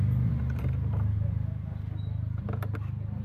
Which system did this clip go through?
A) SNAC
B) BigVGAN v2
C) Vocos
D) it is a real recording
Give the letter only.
D